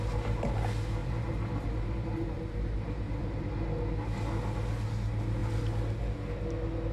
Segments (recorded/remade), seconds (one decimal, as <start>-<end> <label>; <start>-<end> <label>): 0.0-1.0 recorded; 1.0-3.5 remade; 3.5-6.9 recorded

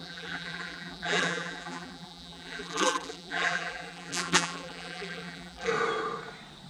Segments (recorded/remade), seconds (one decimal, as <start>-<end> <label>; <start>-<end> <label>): 0.0-5.7 remade; 5.7-6.7 recorded

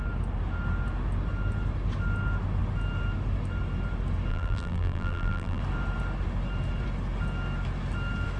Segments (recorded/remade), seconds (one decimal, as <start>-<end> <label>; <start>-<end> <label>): 0.0-4.3 recorded; 4.3-5.6 remade; 5.6-8.4 recorded

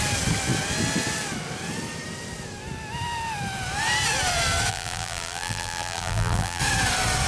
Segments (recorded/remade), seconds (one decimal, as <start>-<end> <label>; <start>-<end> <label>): 0.0-4.7 recorded; 4.7-6.6 remade; 6.6-7.3 recorded

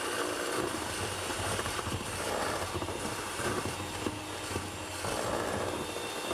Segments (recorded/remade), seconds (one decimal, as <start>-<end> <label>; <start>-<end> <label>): 0.0-1.3 recorded; 1.3-3.7 remade; 3.7-6.3 recorded